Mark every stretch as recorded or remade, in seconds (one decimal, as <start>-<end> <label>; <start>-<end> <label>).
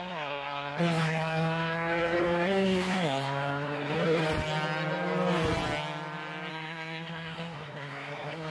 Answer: 0.0-4.2 remade; 4.2-6.5 recorded; 6.5-8.5 remade